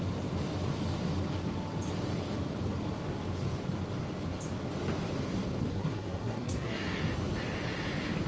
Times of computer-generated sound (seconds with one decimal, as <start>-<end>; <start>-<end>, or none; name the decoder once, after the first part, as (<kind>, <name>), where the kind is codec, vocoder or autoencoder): 5.7-7.0 (codec, SNAC)